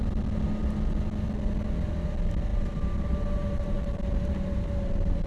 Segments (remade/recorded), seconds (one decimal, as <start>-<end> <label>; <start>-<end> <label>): 0.0-2.5 recorded; 2.5-5.3 remade